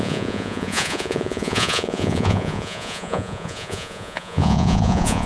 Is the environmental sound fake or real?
fake